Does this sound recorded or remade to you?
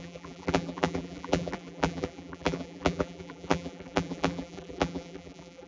remade